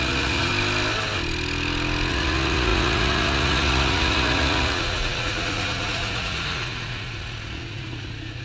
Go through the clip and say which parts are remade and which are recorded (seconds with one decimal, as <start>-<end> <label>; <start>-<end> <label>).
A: 0.0-0.5 remade; 0.5-2.1 recorded; 2.1-8.4 remade